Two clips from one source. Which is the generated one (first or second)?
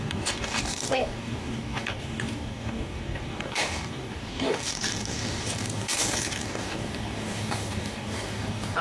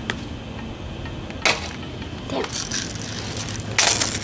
first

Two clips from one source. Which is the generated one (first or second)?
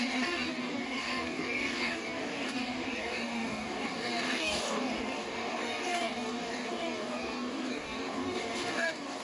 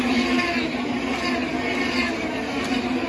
first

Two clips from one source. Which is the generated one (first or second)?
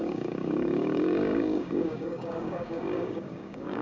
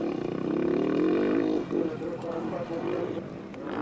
first